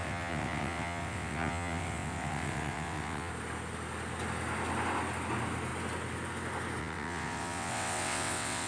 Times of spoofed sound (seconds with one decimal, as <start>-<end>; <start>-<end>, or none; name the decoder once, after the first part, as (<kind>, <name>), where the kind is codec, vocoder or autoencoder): 0.0-3.3 (vocoder, WaveNeXt); 6.8-8.7